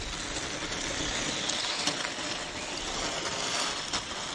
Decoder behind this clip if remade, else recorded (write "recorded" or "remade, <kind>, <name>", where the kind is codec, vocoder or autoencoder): recorded